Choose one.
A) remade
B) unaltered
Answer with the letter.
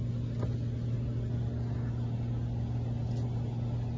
B